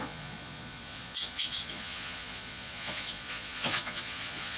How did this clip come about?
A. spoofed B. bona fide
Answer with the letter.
A